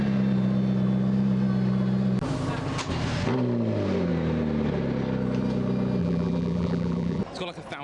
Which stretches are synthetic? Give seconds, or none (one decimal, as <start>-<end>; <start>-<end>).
6.0-7.2